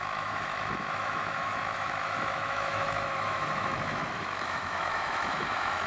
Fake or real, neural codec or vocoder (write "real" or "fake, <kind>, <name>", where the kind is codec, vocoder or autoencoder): fake, autoencoder, DAC-VAE